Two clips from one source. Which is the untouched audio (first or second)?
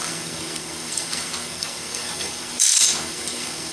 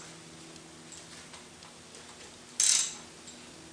second